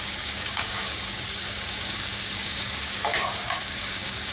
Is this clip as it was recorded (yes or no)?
no